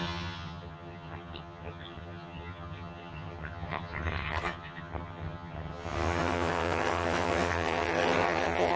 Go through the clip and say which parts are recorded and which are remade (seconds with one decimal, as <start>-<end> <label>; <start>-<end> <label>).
0.0-8.8 remade